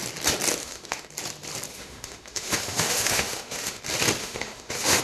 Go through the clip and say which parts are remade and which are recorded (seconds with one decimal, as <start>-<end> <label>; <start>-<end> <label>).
0.0-0.6 recorded; 0.6-1.1 remade; 1.1-1.7 recorded; 1.7-3.8 remade; 3.8-4.2 recorded; 4.2-5.0 remade